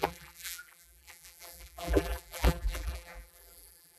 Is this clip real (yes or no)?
no